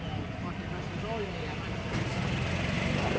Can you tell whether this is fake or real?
real